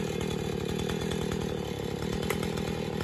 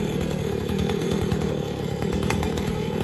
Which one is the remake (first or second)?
second